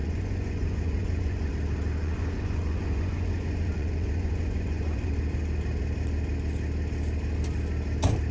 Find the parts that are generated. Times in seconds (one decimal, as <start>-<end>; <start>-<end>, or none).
0.0-1.5; 2.0-5.1